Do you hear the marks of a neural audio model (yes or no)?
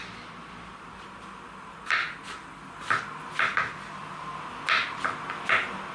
no